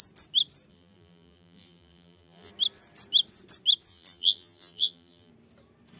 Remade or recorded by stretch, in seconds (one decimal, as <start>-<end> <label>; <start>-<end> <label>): 0.0-0.7 recorded; 0.7-2.5 remade; 2.5-3.9 recorded; 3.9-5.3 remade; 5.3-6.0 recorded